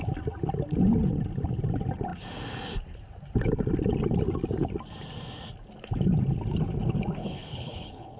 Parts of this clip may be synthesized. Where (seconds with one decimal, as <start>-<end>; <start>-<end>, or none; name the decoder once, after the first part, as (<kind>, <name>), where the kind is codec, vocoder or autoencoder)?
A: 7.2-8.2 (codec, HILCodec)